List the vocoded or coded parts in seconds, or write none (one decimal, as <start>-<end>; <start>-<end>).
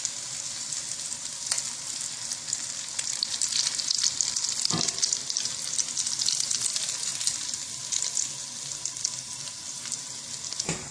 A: none